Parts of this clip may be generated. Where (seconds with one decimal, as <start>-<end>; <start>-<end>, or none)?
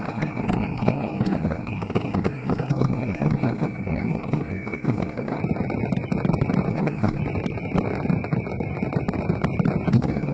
0.0-5.4; 6.7-7.2; 9.9-10.3